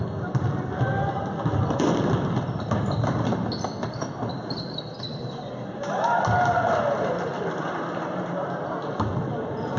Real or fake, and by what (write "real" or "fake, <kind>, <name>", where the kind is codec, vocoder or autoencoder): real